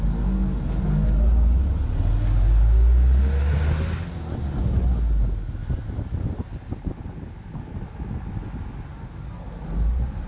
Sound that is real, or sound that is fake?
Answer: real